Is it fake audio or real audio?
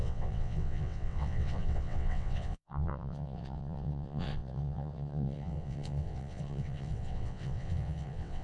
fake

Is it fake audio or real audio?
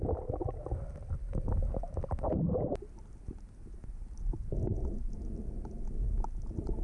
real